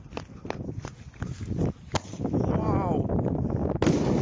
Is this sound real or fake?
real